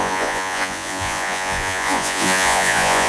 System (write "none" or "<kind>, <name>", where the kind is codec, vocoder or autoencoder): vocoder, Vocos